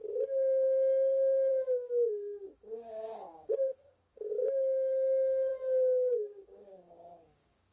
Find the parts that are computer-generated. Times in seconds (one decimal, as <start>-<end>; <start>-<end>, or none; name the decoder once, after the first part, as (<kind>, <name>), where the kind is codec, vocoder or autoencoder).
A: 0.0-7.7 (codec, DAC)